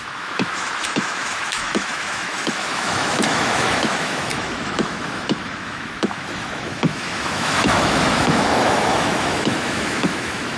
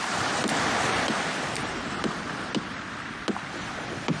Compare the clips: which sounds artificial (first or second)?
first